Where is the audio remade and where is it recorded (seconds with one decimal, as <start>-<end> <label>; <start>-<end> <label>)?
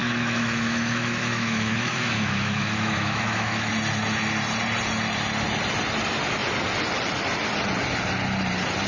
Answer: 0.0-3.7 remade; 3.7-8.9 recorded